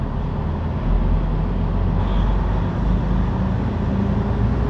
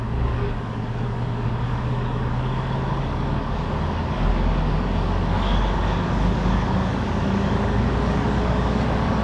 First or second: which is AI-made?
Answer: second